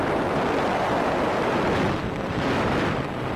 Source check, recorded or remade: remade